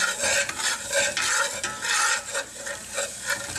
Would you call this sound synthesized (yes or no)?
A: yes